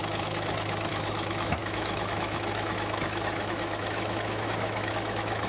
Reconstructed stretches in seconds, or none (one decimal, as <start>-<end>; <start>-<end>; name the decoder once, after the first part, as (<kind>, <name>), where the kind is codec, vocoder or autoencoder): 0.0-5.5 (autoencoder, DAC-VAE)